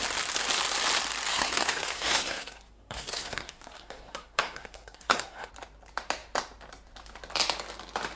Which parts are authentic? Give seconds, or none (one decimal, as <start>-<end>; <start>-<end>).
0.0-1.3; 5.5-8.2